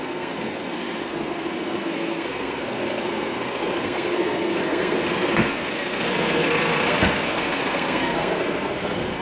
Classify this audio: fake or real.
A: fake